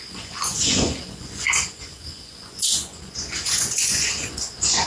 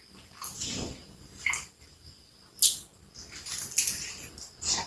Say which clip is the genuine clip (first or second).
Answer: second